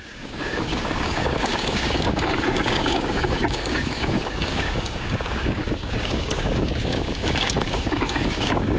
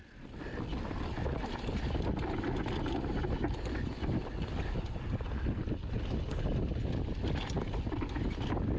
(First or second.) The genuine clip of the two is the second